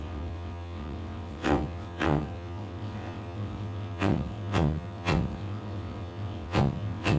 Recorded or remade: remade